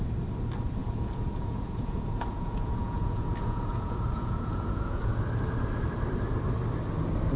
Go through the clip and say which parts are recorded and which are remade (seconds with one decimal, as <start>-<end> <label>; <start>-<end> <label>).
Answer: 0.0-0.8 recorded; 0.8-5.2 remade; 5.2-7.4 recorded